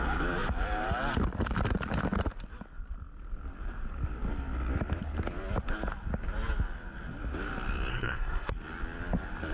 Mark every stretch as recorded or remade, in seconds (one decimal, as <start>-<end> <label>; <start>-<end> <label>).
0.0-7.9 recorded; 7.9-8.5 remade; 8.5-9.5 recorded